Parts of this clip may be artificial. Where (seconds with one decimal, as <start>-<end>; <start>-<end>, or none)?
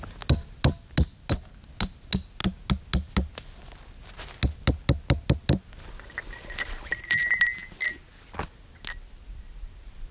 none